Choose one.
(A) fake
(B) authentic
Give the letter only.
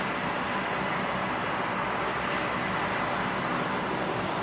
B